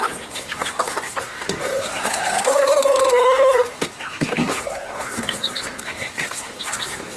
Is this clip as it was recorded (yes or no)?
no